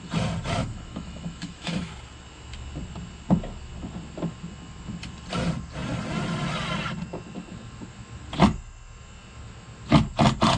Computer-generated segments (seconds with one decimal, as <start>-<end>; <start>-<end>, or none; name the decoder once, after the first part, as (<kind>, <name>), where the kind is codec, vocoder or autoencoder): 0.6-1.9 (autoencoder, DAC-VAE)